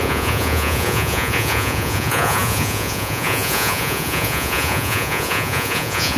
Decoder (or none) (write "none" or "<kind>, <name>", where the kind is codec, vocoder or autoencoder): vocoder, Vocos